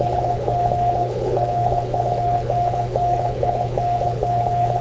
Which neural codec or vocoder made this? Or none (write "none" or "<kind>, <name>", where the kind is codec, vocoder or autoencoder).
codec, HILCodec